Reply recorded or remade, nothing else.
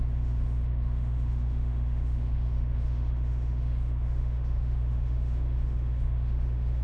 remade